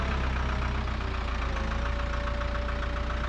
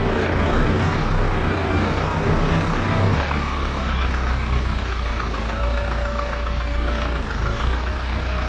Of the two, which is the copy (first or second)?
second